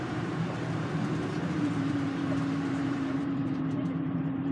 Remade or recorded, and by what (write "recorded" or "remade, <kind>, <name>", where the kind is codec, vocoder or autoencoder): remade, vocoder, BigVGAN v2